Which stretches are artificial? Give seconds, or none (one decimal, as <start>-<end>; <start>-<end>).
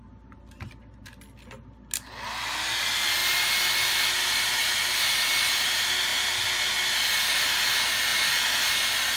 none